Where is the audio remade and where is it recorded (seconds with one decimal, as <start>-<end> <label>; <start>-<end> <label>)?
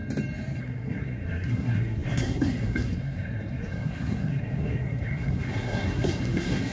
0.0-0.6 recorded; 0.6-6.7 remade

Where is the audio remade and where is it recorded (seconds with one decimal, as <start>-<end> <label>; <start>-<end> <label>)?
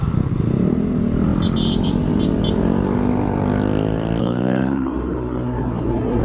0.0-4.2 recorded; 4.2-6.2 remade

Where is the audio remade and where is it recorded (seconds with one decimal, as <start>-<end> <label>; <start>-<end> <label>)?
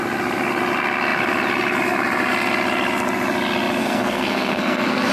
0.0-3.8 recorded; 3.8-5.1 remade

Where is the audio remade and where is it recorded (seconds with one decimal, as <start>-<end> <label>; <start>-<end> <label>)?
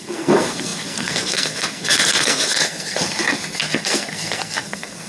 0.0-5.1 remade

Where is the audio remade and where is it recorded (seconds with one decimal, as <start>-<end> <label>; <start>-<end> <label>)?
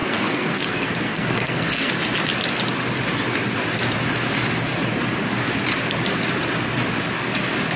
0.0-1.9 remade; 1.9-7.8 recorded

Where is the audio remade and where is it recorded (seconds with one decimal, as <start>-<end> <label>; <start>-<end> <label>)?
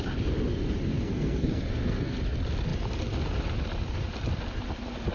0.0-0.9 recorded; 0.9-2.2 remade; 2.2-5.1 recorded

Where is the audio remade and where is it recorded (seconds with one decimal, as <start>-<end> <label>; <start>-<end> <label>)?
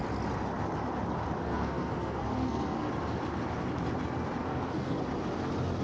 0.0-1.4 recorded; 1.4-2.9 remade; 2.9-4.4 recorded; 4.4-5.0 remade; 5.0-5.8 recorded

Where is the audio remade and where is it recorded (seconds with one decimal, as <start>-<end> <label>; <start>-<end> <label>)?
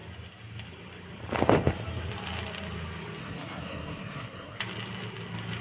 0.0-3.2 recorded; 3.2-4.6 remade; 4.6-5.6 recorded